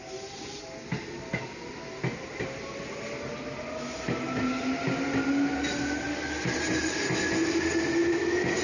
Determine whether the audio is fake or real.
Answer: real